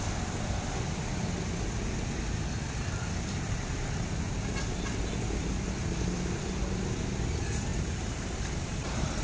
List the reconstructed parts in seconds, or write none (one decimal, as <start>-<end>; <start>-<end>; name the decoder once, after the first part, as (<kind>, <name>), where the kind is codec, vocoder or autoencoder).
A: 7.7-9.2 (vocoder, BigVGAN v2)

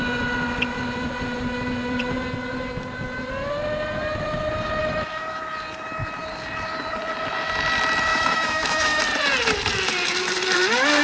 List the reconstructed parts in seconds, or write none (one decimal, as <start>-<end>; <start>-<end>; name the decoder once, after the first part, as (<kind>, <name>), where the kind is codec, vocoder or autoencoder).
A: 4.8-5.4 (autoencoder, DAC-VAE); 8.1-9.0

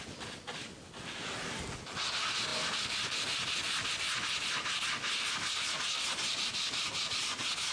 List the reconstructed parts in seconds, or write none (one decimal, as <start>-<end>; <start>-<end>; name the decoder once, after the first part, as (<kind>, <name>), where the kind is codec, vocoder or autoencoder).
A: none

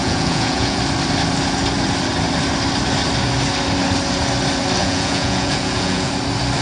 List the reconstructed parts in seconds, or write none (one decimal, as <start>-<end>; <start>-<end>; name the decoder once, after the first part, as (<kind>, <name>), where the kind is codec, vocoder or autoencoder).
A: 0.0-0.8 (vocoder, Vocos); 4.8-6.1

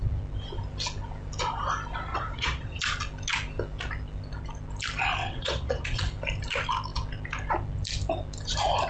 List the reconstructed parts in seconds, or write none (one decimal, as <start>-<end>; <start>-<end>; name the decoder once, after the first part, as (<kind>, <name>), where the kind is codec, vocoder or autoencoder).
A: 2.1-2.8 (vocoder, WaveNeXt); 5.2-6.0